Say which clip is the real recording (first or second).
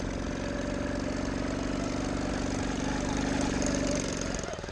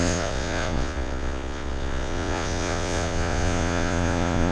first